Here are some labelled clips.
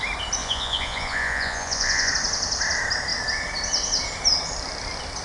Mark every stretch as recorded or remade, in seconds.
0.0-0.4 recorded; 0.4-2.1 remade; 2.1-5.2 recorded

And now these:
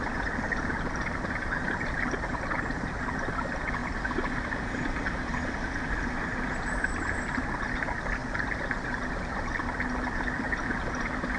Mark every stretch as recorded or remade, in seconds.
0.0-11.4 recorded

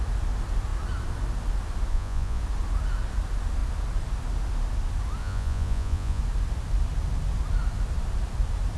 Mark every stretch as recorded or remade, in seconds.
0.0-1.9 recorded; 1.9-2.4 remade; 2.4-5.2 recorded; 5.2-6.2 remade; 6.2-8.8 recorded

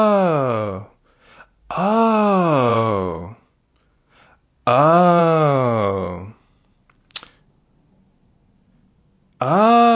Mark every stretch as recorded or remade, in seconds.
0.0-2.7 recorded; 2.7-4.1 remade; 4.1-10.0 recorded

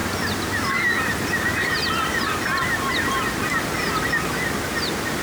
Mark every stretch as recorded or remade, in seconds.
0.0-5.2 recorded

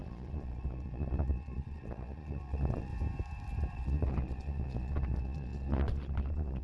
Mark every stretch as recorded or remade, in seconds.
0.0-2.9 remade; 2.9-3.7 recorded; 3.7-6.6 remade